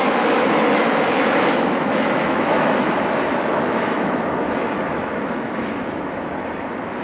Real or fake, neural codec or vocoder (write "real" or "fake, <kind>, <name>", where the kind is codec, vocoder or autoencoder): fake, autoencoder, DAC-VAE